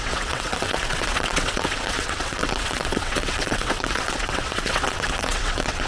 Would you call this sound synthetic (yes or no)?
yes